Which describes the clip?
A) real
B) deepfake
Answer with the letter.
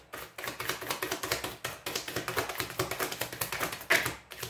A